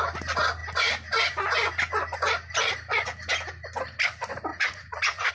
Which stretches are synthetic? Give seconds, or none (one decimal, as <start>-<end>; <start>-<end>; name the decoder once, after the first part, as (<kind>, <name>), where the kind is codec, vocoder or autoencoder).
4.5-5.3 (vocoder, Vocos)